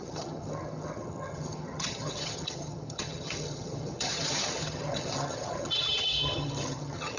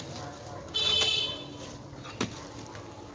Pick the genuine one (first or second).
second